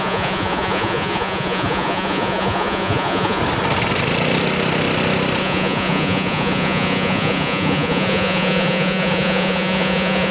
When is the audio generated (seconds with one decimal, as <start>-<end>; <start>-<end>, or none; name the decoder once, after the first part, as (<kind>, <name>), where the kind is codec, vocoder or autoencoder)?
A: 0.0-3.4 (vocoder, Vocos); 5.4-10.3